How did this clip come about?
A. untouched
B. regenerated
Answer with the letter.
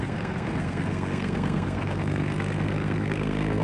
B